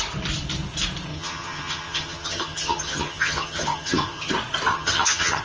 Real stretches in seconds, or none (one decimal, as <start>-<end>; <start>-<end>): 0.0-1.1; 4.3-4.7

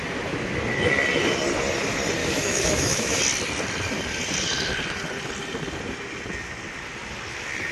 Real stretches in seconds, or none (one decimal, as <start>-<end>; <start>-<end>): 0.0-2.2; 3.2-7.7